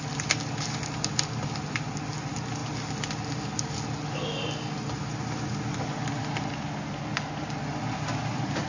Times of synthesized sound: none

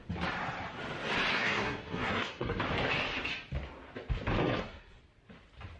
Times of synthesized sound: 1.3-2.6 (codec, SNAC); 4.4-5.0

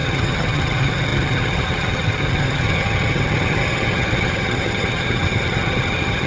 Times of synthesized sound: 0.0-6.3 (vocoder, HiFi-GAN)

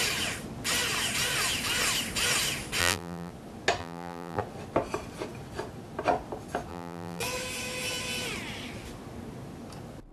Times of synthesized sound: 2.8-3.3 (vocoder, BigVGAN v2); 3.8-4.4; 6.7-7.2

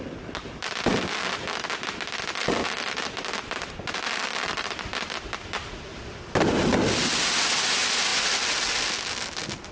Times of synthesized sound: none

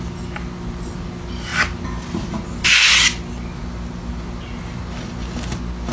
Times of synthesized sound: none